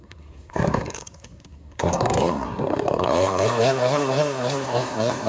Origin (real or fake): fake